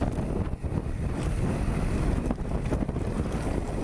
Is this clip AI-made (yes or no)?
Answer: no